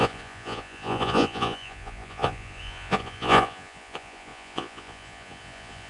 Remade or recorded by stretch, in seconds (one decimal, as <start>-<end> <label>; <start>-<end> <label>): 0.0-5.9 remade